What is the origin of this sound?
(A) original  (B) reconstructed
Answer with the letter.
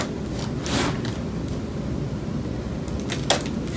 A